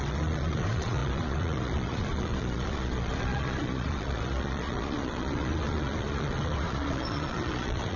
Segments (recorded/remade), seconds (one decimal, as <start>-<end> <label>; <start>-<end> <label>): 0.0-8.0 remade